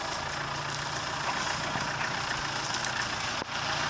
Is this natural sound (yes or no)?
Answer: yes